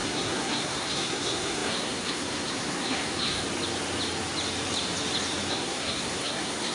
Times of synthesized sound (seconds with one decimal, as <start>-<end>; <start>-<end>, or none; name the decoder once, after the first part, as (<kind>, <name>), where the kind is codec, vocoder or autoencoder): 0.0-3.4 (codec, SNAC); 5.5-6.7